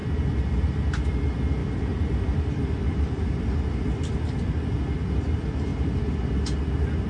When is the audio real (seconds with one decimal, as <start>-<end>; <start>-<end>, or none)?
0.0-1.6; 3.4-7.1